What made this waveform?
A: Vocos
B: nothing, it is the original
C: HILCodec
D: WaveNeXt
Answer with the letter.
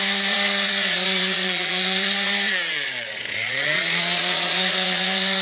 A